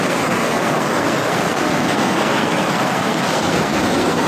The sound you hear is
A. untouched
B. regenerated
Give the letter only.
B